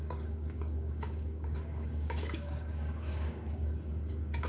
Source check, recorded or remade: remade